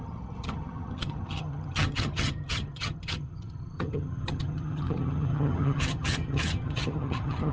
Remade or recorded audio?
remade